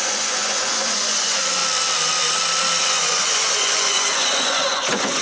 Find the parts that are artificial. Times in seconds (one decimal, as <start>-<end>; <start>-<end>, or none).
0.0-1.6; 2.8-5.2